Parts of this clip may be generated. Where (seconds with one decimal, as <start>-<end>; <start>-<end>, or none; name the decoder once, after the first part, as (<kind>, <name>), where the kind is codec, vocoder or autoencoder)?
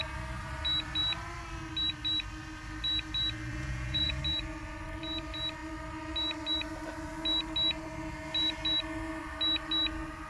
3.5-4.2 (vocoder, Vocos)